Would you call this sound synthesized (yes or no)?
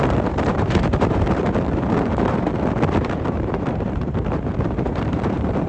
yes